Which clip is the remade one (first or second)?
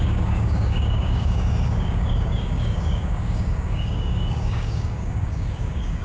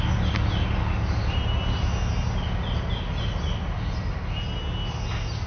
first